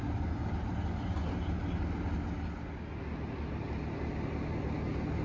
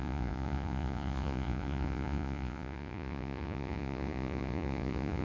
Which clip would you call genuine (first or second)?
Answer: first